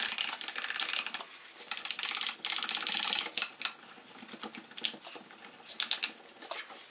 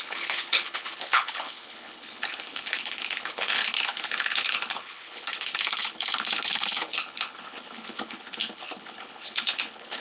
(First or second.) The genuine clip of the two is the first